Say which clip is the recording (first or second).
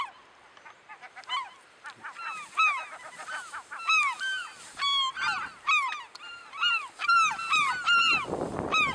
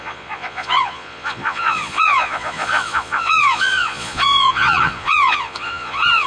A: first